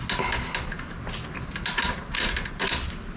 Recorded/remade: recorded